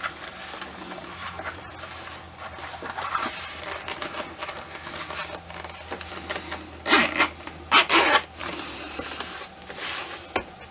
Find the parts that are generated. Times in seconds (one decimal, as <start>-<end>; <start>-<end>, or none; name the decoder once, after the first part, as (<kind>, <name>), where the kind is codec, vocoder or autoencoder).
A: 1.2-1.7 (vocoder, BigVGAN v2); 4.0-4.5; 8.4-9.5